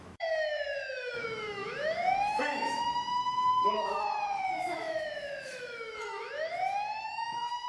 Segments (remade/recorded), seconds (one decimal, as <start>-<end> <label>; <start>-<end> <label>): 0.0-7.7 remade